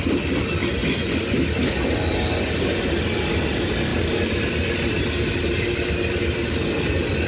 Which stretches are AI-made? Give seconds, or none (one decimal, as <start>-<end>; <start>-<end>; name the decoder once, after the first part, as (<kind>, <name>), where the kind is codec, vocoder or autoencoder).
none